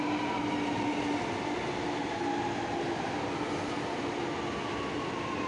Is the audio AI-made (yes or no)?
no